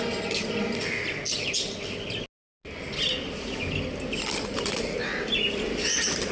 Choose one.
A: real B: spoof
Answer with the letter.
A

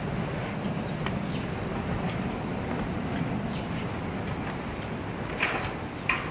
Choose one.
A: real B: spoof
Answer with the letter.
A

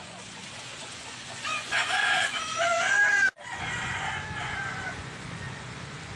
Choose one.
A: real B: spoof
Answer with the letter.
B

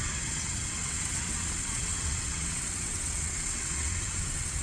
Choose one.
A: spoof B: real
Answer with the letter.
A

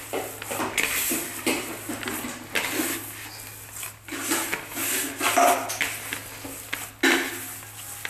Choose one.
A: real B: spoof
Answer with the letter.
A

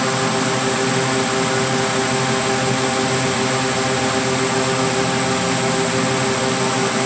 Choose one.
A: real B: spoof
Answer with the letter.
A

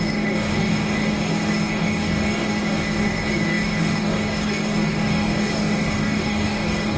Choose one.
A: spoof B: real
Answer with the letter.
A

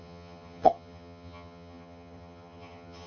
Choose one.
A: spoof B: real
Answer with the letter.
A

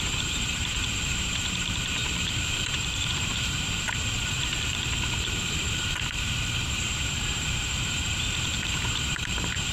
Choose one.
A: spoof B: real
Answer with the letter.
A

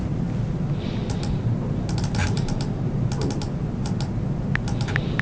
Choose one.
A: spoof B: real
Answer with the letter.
B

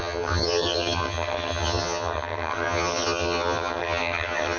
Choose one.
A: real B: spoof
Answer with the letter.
B